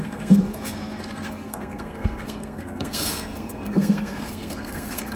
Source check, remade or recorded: remade